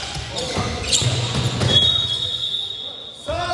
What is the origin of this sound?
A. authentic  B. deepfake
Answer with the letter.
B